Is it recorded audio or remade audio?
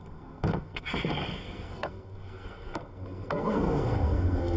remade